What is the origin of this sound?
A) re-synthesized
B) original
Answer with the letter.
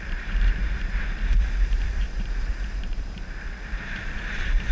A